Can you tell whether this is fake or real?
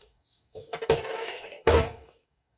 fake